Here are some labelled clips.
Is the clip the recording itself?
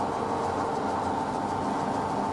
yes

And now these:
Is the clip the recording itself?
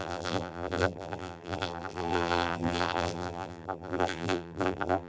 no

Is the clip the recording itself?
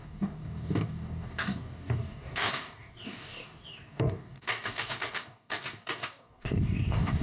no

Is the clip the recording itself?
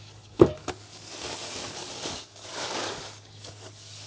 no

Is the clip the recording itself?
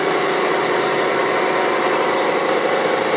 no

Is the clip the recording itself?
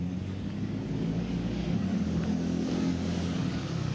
no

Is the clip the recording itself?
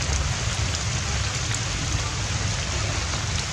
yes